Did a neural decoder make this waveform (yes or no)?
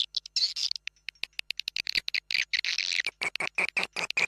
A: no